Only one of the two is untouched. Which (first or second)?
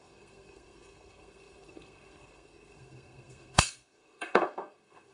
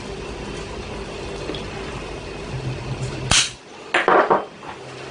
second